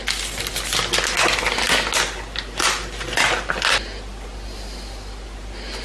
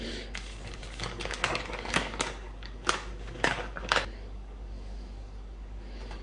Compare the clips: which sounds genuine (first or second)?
first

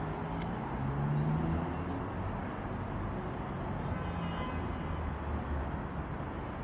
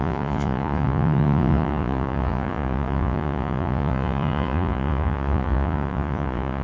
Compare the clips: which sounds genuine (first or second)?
first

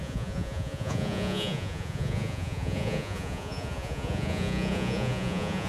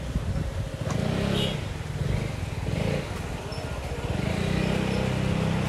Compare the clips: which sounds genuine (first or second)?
second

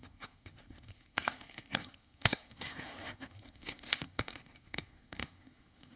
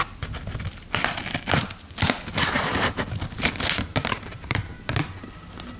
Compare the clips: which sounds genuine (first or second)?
second